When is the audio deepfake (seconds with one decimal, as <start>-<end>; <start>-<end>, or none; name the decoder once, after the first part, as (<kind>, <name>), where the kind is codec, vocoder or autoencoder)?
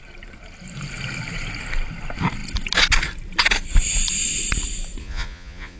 5.0-5.8 (vocoder, Vocos)